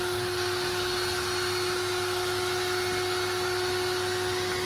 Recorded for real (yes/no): yes